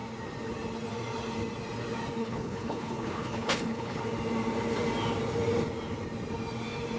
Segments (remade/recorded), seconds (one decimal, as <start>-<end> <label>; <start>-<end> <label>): 0.0-2.2 recorded; 2.2-4.0 remade; 4.0-7.0 recorded